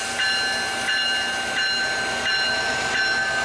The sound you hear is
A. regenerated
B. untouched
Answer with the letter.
B